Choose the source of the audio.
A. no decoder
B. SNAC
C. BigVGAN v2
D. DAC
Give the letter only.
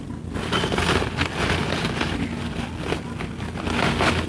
A